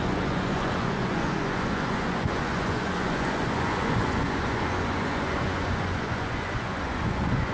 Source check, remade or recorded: remade